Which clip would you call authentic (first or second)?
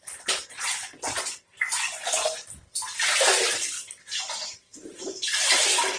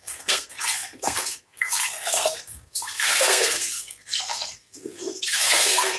first